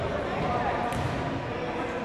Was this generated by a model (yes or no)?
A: no